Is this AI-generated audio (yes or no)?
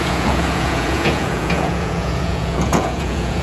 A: yes